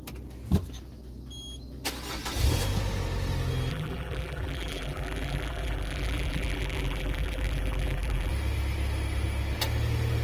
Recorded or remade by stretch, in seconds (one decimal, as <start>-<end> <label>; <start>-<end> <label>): 0.0-3.7 recorded; 3.7-8.3 remade; 8.3-10.2 recorded